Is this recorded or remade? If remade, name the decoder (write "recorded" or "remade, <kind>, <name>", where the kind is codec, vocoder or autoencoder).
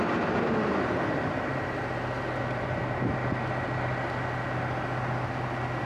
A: recorded